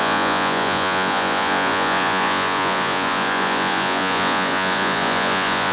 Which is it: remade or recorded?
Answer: remade